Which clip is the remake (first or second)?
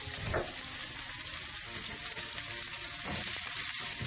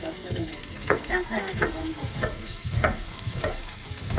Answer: second